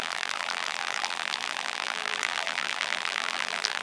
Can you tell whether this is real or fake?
fake